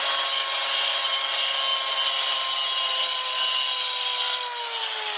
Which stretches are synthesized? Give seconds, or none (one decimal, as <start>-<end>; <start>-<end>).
none